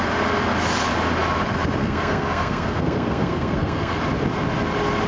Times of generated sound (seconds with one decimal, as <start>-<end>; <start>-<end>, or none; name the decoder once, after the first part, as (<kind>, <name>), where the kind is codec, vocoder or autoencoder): 1.8-4.0 (codec, SNAC)